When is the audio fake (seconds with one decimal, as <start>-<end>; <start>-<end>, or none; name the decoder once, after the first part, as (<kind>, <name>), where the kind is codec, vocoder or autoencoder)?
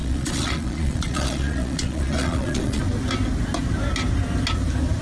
0.0-2.8 (vocoder, Vocos)